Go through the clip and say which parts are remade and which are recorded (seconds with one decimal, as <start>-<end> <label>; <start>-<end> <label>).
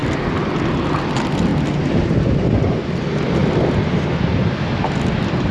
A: 0.0-5.5 recorded